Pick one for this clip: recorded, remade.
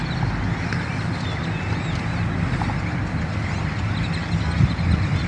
recorded